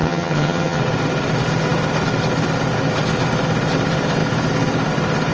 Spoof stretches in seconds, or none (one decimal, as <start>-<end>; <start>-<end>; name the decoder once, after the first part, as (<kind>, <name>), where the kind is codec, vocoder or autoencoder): 0.0-0.8 (vocoder, HiFi-GAN)